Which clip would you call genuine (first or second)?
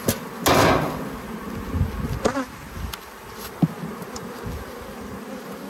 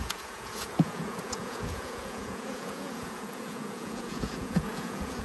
first